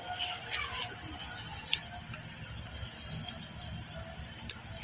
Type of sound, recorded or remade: recorded